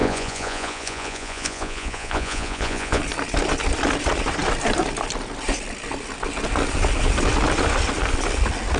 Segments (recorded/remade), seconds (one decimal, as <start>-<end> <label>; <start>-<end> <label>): 0.0-3.0 remade; 3.0-8.8 recorded